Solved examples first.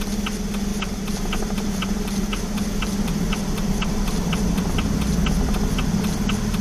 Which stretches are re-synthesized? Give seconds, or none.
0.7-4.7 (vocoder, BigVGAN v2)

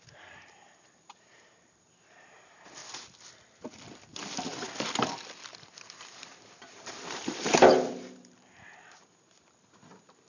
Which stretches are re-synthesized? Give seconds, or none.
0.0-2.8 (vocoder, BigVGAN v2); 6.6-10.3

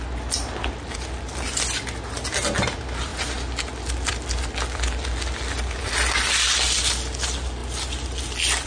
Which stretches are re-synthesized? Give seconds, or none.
7.6-8.2 (vocoder, BigVGAN v2)

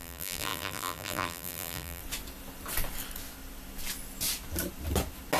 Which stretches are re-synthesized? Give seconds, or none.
0.0-2.0 (vocoder, BigVGAN v2)